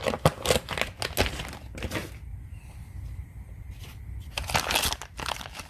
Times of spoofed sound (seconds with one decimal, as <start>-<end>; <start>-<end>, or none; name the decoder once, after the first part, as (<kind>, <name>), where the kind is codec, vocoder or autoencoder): 2.0-5.7 (vocoder, BigVGAN v2)